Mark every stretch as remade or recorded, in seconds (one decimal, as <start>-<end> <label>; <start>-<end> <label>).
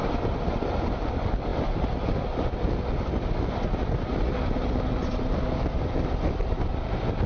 0.0-1.5 remade; 1.5-4.8 recorded; 4.8-7.3 remade